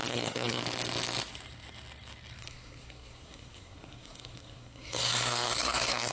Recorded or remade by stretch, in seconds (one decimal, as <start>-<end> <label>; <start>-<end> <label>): 0.0-0.6 remade; 0.6-2.4 recorded; 2.4-6.1 remade

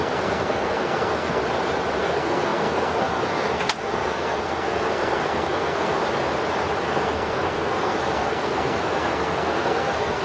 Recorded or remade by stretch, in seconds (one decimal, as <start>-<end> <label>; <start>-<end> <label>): 0.0-1.4 remade; 1.4-2.0 recorded; 2.0-6.0 remade; 6.0-6.8 recorded; 6.8-10.2 remade

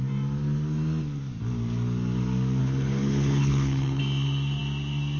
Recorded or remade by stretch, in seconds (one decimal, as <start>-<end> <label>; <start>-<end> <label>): 0.0-2.6 recorded; 2.6-4.0 remade; 4.0-5.2 recorded

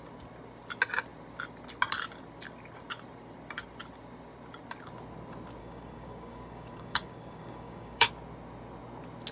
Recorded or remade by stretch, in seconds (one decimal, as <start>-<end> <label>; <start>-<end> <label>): 0.0-5.6 recorded; 5.6-8.1 remade; 8.1-9.3 recorded

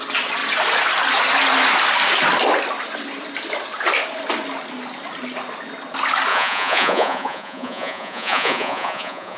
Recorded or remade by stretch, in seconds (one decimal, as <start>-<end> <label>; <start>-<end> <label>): 0.0-6.3 recorded; 6.3-9.4 remade

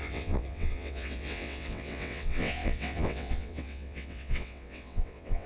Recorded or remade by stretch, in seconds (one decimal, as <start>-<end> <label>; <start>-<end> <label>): 0.0-5.5 remade

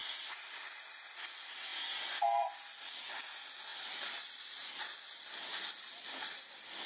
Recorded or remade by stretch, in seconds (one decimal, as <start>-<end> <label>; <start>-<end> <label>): 0.0-3.7 recorded; 3.7-4.3 remade; 4.3-6.9 recorded